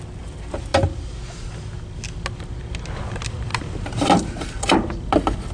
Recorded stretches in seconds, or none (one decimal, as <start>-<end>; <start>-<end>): 0.0-5.5